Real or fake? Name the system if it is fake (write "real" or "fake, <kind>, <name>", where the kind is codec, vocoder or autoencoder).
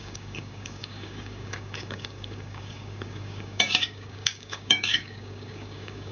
fake, codec, DAC